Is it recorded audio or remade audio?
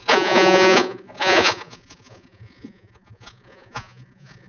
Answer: remade